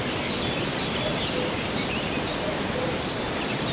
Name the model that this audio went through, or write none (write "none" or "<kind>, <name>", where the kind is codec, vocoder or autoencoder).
vocoder, BigVGAN v2